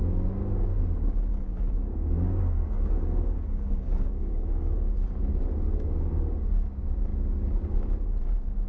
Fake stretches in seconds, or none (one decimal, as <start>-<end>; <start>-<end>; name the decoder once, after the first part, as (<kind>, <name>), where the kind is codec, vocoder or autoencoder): 1.3-4.7 (codec, DAC)